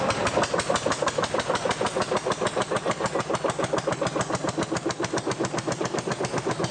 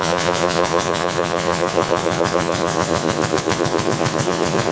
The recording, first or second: first